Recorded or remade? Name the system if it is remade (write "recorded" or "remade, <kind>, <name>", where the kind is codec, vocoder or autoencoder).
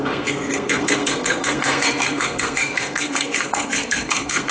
remade, codec, SNAC